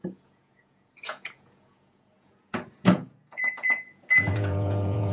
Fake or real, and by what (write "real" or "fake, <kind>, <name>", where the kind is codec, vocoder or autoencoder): fake, vocoder, Vocos